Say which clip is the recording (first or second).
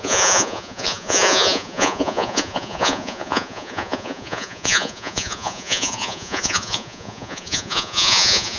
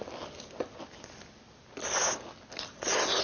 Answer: second